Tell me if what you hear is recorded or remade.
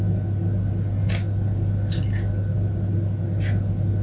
recorded